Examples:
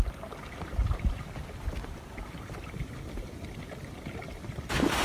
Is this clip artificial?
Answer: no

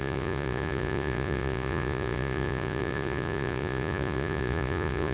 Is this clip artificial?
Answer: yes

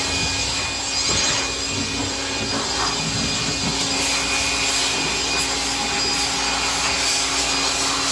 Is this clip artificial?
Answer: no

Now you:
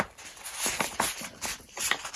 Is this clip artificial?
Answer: no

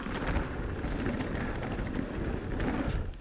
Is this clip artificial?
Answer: no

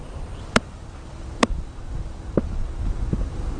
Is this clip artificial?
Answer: no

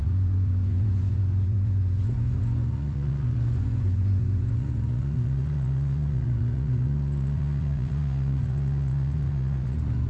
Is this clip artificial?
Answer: yes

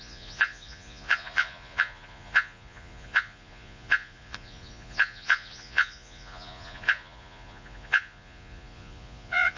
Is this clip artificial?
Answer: yes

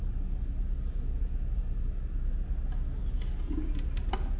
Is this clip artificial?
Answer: no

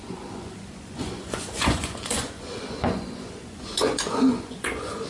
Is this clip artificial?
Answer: yes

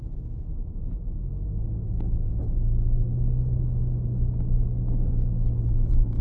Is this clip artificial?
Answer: no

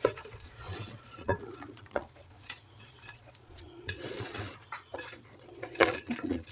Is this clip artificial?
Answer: yes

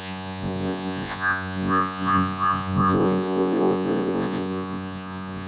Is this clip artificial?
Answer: yes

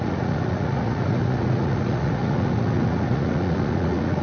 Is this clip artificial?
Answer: yes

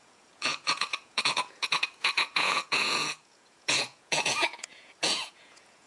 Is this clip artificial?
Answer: yes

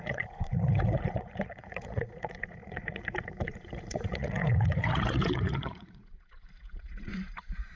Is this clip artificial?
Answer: yes